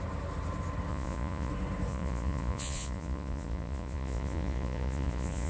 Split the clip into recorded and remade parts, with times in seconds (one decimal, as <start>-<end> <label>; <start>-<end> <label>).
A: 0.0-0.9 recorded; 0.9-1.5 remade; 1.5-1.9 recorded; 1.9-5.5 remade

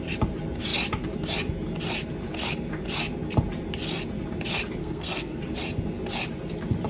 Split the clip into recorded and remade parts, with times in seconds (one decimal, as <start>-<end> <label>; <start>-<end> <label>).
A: 0.0-4.8 recorded; 4.8-5.4 remade; 5.4-6.9 recorded

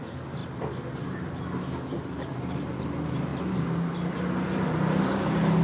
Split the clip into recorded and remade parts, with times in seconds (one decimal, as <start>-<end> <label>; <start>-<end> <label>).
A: 0.0-5.6 recorded

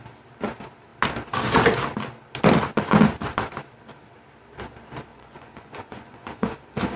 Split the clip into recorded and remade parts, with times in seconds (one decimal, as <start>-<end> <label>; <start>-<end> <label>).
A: 0.0-5.1 recorded; 5.1-6.6 remade; 6.6-7.0 recorded

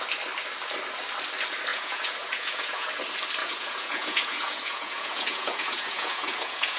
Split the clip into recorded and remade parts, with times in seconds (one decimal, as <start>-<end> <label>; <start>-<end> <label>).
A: 0.0-1.7 recorded; 1.7-2.9 remade; 2.9-3.4 recorded; 3.4-6.8 remade

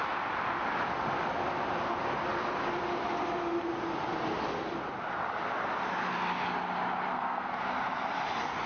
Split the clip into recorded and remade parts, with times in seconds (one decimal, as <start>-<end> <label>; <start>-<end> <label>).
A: 0.0-7.1 recorded; 7.1-7.6 remade; 7.6-8.7 recorded

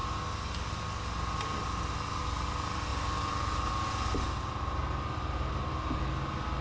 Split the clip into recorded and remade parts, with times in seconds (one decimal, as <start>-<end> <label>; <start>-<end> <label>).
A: 0.0-2.9 recorded; 2.9-3.7 remade; 3.7-6.6 recorded